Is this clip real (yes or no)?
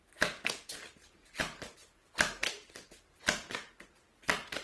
yes